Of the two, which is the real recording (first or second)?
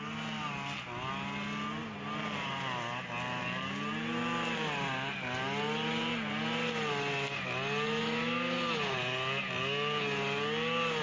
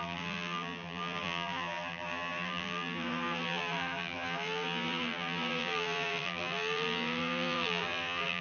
first